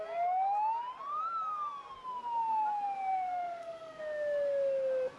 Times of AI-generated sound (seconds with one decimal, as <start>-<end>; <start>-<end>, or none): 3.1-4.0